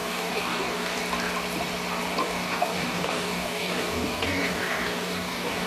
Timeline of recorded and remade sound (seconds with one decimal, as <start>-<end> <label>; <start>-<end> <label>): 0.0-1.0 remade; 1.0-2.2 recorded; 2.2-5.7 remade